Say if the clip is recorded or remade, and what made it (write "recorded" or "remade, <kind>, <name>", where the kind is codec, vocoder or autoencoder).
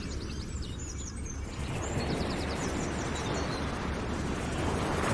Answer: recorded